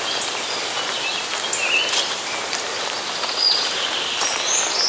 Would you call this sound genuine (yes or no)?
yes